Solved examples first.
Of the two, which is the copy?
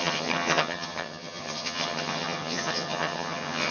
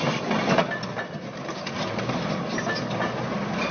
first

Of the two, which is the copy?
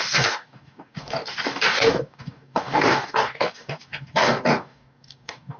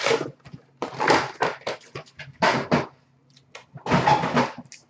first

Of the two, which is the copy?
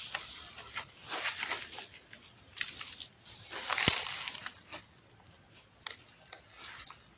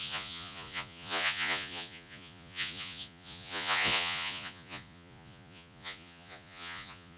second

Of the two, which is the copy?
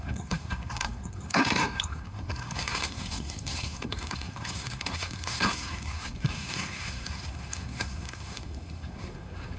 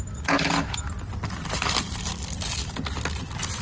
first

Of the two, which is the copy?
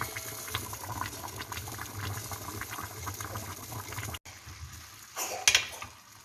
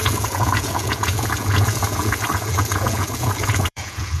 second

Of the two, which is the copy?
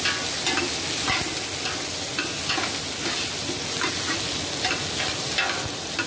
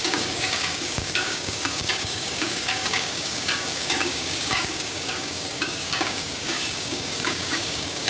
second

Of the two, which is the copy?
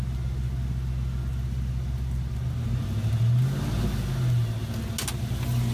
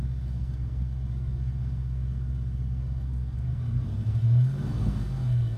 second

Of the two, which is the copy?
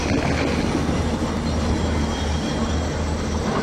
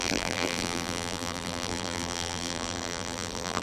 second